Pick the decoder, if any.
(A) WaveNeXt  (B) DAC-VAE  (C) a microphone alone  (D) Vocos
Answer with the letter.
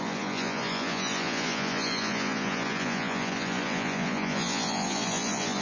D